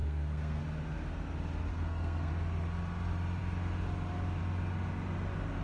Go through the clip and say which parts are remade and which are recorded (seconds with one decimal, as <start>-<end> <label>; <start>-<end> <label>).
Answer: 0.0-0.6 remade; 0.6-1.7 recorded; 1.7-2.3 remade; 2.3-5.6 recorded